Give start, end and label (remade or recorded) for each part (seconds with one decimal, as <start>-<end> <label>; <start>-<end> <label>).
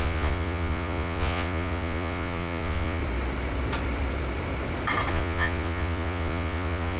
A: 0.0-3.0 remade; 3.0-5.1 recorded; 5.1-7.0 remade